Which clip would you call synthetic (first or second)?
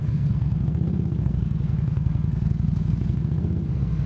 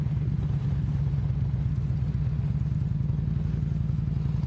first